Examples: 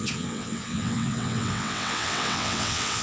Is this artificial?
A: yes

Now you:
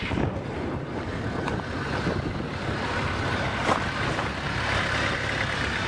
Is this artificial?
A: no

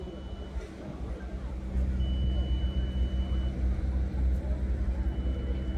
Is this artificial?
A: no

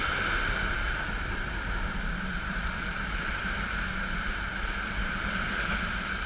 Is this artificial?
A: no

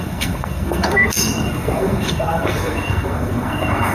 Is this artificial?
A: yes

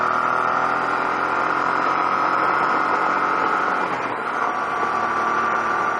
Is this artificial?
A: no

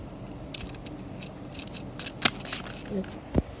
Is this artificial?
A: no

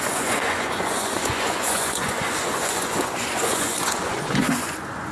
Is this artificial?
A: yes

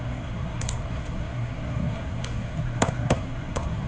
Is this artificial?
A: yes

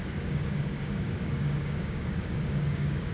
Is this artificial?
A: yes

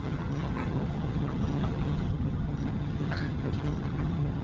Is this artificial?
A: yes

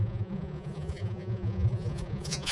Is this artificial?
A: yes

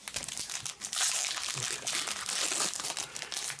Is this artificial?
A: no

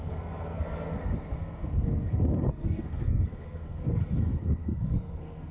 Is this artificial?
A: yes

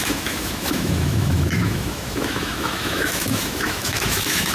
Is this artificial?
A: yes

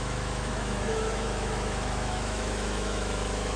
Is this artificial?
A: yes